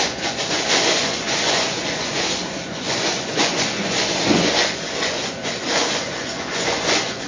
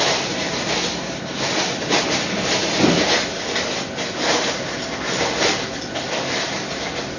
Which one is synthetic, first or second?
first